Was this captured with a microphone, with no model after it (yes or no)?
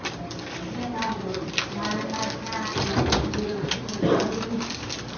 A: yes